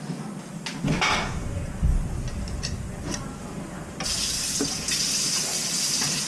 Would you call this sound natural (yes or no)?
yes